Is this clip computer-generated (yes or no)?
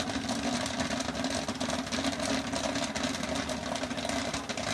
no